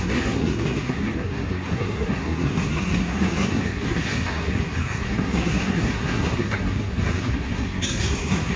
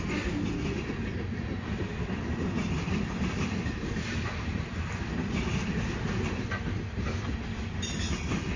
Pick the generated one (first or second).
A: first